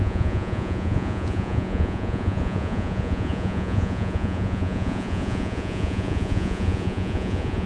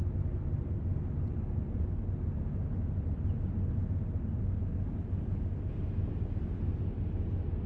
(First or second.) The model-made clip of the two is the first